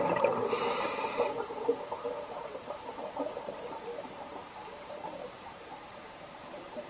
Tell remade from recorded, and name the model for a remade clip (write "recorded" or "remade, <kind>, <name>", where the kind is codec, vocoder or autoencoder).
remade, vocoder, BigVGAN v2